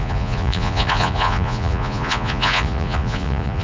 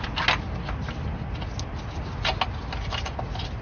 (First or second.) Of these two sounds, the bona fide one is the second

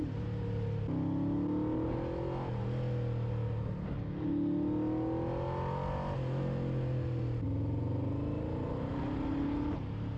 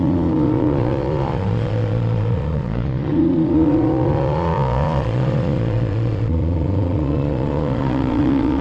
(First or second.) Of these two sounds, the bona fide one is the first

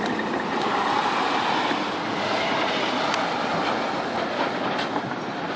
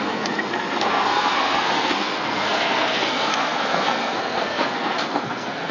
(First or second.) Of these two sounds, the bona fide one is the first